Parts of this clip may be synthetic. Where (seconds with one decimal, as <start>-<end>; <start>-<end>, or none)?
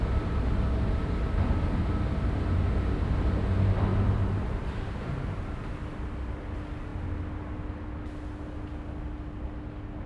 3.9-5.5